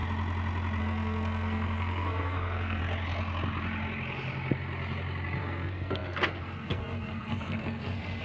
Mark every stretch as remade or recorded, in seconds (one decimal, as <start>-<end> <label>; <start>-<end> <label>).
0.0-0.8 recorded; 0.8-2.8 remade; 2.8-5.4 recorded; 5.4-8.2 remade